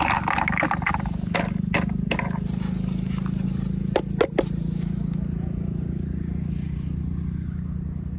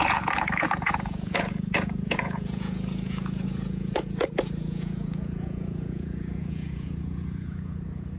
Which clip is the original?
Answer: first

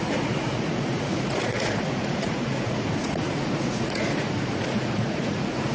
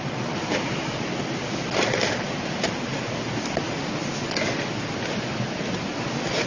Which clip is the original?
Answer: second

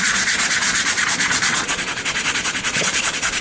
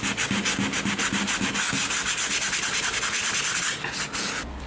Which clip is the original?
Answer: second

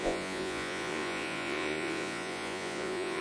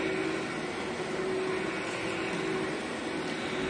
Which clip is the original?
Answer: second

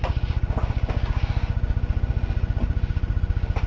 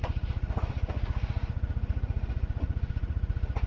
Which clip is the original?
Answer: first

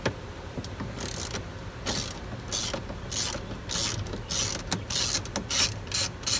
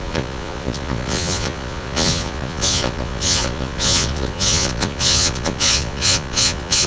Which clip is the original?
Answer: first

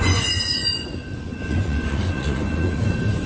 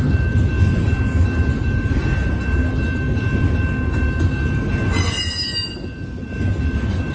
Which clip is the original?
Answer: second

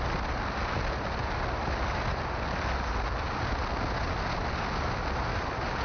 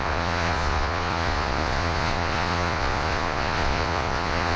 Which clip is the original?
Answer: first